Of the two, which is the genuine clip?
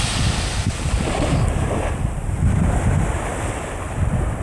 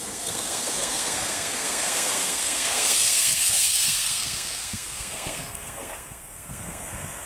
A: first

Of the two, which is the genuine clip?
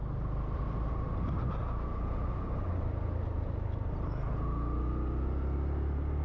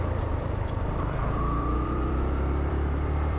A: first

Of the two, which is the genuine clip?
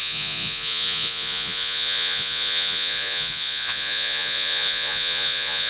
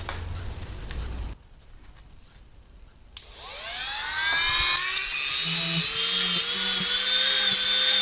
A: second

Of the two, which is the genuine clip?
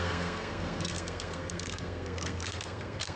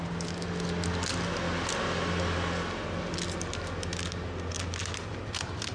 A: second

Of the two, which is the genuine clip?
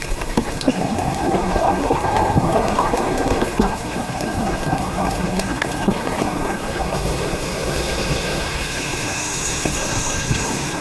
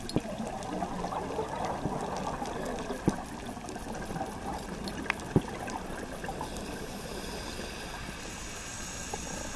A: second